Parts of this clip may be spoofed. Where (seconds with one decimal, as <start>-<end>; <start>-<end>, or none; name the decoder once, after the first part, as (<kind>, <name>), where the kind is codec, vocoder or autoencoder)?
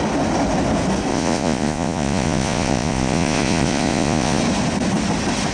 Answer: 1.1-4.4 (vocoder, Vocos)